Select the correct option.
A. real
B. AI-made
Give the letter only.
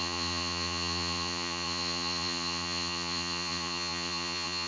B